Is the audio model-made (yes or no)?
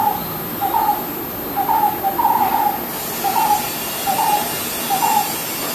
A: no